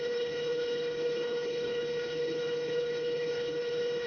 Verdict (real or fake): fake